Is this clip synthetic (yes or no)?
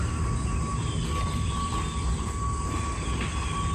no